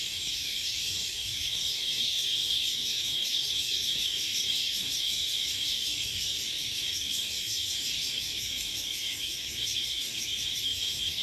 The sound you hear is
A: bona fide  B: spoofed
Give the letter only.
B